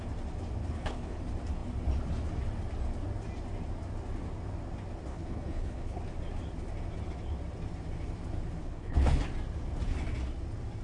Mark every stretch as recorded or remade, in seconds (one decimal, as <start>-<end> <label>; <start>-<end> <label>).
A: 0.0-0.6 recorded; 0.6-1.2 remade; 1.2-5.1 recorded; 5.1-6.0 remade; 6.0-8.6 recorded; 8.6-9.2 remade; 9.2-10.8 recorded